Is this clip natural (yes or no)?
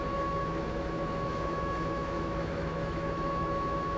no